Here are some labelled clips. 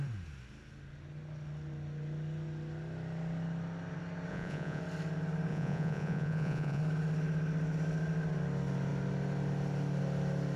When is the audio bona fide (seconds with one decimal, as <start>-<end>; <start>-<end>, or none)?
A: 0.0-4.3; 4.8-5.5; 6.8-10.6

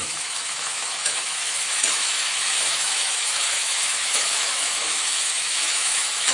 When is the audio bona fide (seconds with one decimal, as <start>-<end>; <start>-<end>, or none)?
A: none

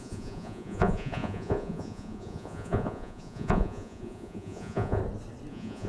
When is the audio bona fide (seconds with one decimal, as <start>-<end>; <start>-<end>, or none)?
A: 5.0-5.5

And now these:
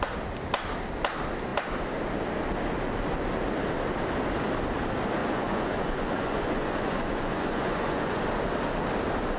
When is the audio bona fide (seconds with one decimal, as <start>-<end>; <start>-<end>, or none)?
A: 0.0-5.2; 8.2-9.4

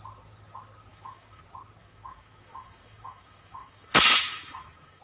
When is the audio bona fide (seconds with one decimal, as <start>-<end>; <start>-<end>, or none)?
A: 0.0-0.9; 1.4-1.8

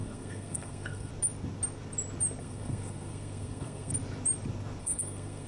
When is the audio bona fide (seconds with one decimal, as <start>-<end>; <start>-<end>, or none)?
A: 1.1-2.4; 3.9-4.8